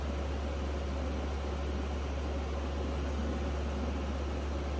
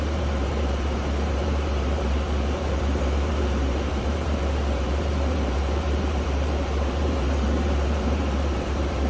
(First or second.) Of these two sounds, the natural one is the first